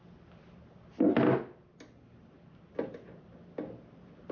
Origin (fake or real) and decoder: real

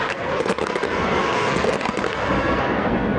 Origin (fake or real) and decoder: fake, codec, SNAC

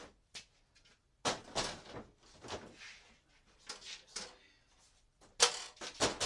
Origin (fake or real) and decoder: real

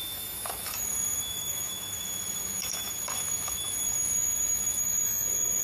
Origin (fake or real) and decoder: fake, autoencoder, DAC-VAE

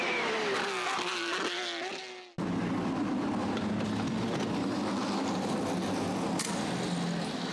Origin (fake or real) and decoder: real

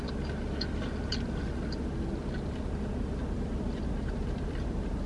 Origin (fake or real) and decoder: real